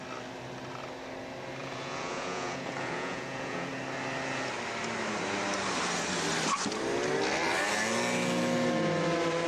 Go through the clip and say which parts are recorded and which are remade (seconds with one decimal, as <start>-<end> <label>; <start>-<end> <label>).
0.0-1.6 recorded; 1.6-3.7 remade; 3.7-9.5 recorded